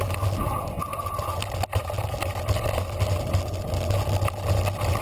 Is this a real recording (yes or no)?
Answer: yes